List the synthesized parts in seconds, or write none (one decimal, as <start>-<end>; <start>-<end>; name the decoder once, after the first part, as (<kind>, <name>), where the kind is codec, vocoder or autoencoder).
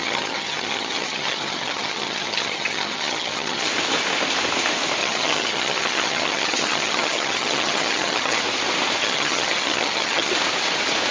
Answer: 0.0-3.7 (vocoder, HiFi-GAN); 5.0-8.4; 9.0-10.3